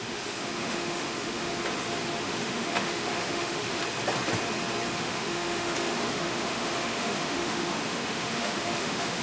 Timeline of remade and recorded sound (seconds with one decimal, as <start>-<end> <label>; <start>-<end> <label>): 0.0-1.5 remade; 1.5-2.2 recorded; 2.2-3.8 remade; 3.8-4.9 recorded; 4.9-9.2 remade